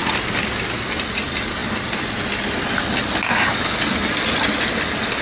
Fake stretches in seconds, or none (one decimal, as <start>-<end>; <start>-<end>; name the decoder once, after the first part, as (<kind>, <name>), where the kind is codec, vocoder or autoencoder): none